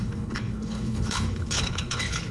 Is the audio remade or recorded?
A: remade